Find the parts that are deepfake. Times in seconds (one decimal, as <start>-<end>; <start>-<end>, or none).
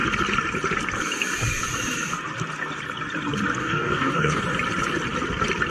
3.6-4.4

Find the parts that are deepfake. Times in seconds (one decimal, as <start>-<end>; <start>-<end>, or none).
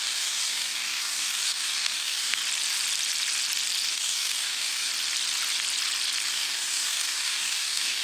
0.0-2.4; 3.9-4.9; 6.3-8.0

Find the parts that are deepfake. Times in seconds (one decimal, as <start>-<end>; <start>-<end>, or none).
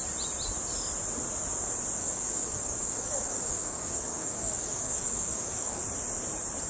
2.0-5.8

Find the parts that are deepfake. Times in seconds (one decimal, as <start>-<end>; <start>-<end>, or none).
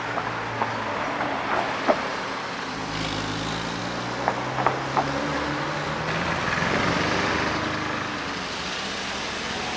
none